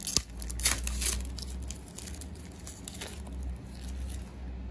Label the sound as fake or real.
real